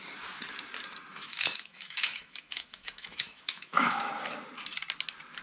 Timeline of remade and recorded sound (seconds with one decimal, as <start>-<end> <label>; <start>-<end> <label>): 0.0-1.1 recorded; 1.1-4.1 remade; 4.1-5.4 recorded